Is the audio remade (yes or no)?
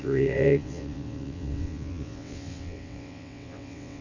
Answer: yes